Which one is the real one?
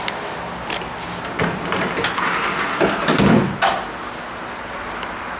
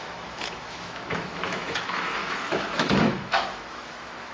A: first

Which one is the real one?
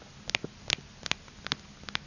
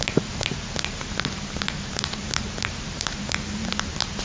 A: first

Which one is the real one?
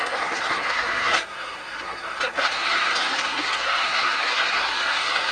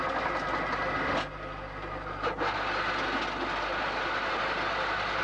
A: second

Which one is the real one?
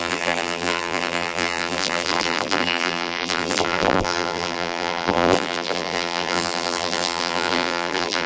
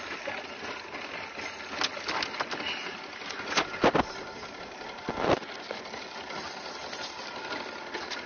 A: second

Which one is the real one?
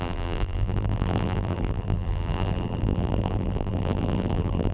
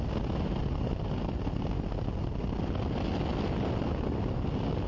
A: second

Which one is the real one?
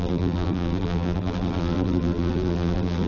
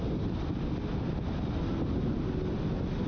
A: second